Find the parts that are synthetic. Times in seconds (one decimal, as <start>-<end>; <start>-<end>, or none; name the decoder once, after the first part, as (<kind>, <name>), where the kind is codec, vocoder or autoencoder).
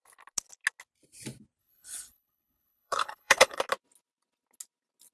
1.6-3.6 (codec, HILCodec)